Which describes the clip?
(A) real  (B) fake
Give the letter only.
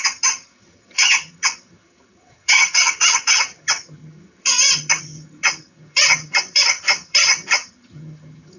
B